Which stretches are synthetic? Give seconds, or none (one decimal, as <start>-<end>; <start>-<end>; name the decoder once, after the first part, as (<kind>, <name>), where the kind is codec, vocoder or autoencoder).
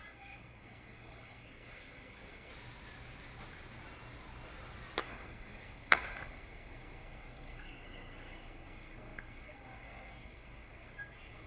0.0-2.5 (codec, SNAC); 5.0-11.5